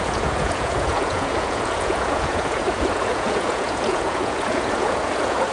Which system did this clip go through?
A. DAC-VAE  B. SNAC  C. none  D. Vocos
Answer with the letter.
D